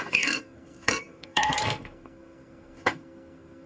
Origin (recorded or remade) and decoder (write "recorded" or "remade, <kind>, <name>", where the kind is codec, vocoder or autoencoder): remade, codec, SNAC